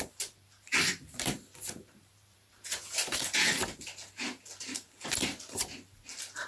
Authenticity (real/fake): fake